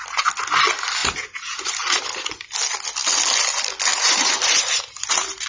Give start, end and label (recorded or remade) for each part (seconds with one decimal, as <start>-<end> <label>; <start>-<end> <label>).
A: 0.0-1.0 recorded; 1.0-1.9 remade; 1.9-3.9 recorded; 3.9-5.1 remade; 5.1-5.5 recorded